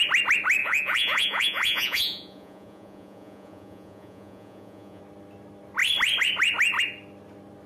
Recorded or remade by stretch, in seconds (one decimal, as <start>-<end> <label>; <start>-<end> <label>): 0.0-0.6 recorded; 0.6-5.0 remade; 5.0-7.7 recorded